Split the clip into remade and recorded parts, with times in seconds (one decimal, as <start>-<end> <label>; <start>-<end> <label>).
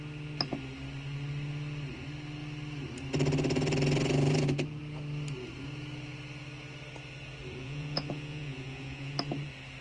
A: 0.0-7.6 recorded; 7.6-9.1 remade; 9.1-9.8 recorded